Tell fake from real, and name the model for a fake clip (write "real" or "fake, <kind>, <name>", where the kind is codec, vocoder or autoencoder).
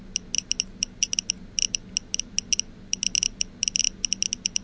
real